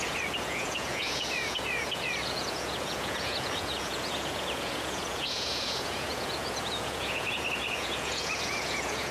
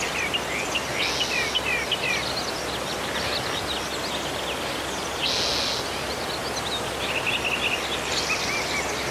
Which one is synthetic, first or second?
first